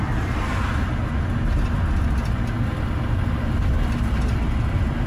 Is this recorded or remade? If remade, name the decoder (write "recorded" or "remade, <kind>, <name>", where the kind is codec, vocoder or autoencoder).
recorded